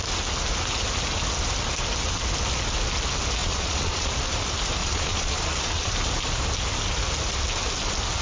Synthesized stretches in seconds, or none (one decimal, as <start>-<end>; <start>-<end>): 3.4-4.1; 4.8-5.9